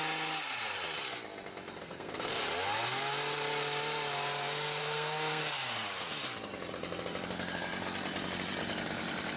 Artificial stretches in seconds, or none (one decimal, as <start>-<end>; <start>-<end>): 1.8-2.4; 4.8-5.4